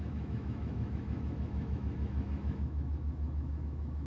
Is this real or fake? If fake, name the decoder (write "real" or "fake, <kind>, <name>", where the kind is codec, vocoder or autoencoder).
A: fake, autoencoder, DAC-VAE